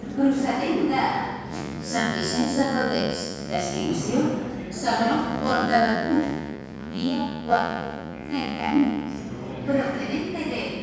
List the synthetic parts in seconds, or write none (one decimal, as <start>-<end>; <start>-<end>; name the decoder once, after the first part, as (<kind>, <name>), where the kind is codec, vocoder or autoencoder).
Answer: 1.5-3.9 (vocoder, Vocos); 5.3-9.2